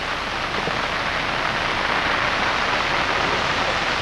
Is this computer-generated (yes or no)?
no